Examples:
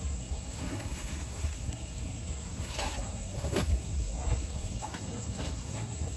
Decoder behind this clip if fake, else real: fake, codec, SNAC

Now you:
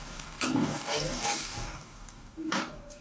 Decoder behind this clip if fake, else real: fake, codec, DAC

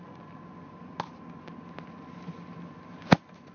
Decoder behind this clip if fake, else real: real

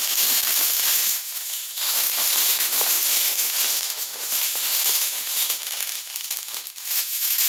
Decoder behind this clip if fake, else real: fake, autoencoder, DAC-VAE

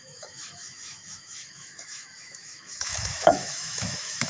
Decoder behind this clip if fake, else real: fake, autoencoder, DAC-VAE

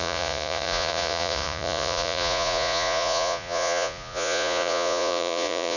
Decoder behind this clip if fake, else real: fake, vocoder, Vocos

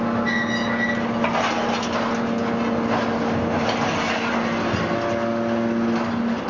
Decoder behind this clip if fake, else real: real